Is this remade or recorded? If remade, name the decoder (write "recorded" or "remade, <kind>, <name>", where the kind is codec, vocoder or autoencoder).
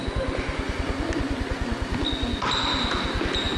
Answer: recorded